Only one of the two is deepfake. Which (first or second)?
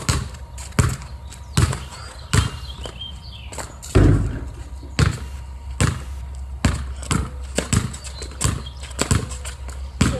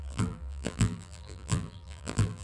second